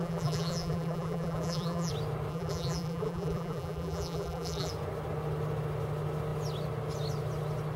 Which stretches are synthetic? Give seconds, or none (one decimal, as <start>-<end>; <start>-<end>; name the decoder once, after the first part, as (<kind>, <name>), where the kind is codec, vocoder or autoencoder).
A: 0.0-1.9 (vocoder, BigVGAN v2); 2.3-4.7